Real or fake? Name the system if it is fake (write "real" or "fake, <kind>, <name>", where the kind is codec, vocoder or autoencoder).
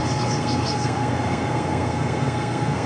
fake, codec, SNAC